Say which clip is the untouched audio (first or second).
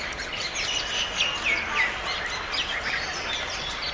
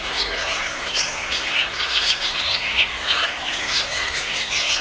first